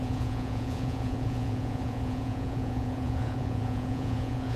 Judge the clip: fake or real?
fake